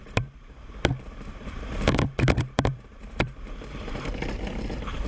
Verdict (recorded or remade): remade